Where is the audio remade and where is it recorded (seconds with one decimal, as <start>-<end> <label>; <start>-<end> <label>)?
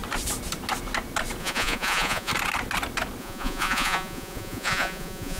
0.0-1.4 recorded; 1.4-2.3 remade; 2.3-3.2 recorded; 3.2-5.4 remade